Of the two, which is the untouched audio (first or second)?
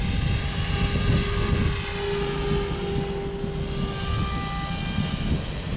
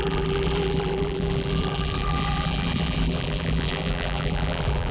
first